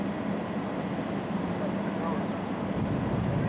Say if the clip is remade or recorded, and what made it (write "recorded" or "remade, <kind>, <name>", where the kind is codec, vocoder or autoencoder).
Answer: recorded